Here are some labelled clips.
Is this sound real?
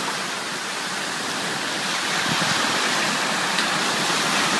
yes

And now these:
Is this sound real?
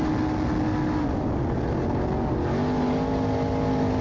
yes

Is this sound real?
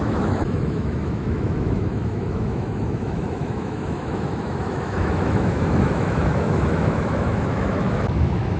no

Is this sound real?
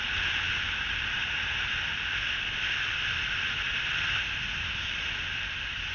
yes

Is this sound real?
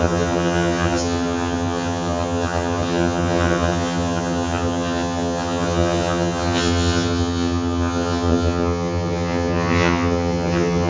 no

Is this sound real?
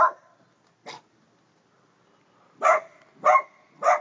yes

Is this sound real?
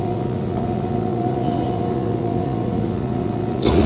no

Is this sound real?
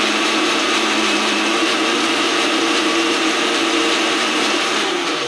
no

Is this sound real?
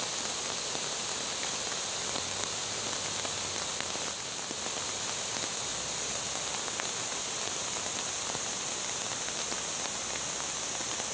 yes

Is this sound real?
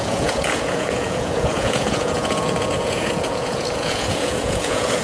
no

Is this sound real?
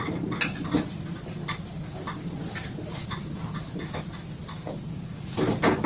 yes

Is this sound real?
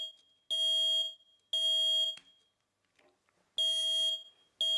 yes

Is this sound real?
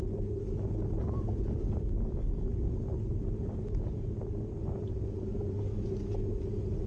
yes